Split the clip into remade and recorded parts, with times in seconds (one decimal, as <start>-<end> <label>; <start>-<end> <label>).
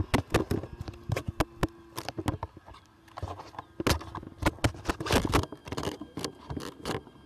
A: 0.0-7.3 recorded